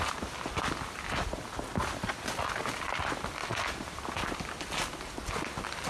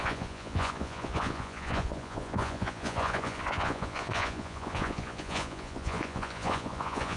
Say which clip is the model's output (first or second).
second